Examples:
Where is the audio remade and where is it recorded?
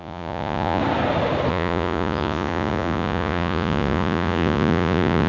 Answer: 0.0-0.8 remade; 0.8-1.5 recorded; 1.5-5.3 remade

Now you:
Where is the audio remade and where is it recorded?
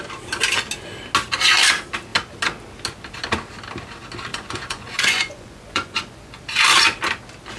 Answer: 0.0-4.3 recorded; 4.3-6.4 remade; 6.4-7.6 recorded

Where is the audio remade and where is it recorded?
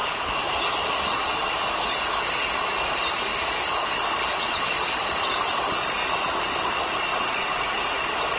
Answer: 0.0-7.1 recorded; 7.1-8.0 remade; 8.0-8.4 recorded